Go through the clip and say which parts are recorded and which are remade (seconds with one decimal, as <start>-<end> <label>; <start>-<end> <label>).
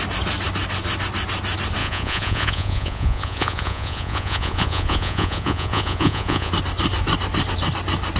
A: 0.0-1.8 recorded; 1.8-6.5 remade; 6.5-8.2 recorded